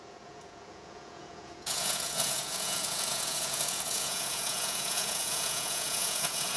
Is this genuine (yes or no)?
no